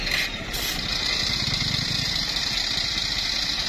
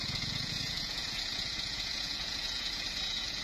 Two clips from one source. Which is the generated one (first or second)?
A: second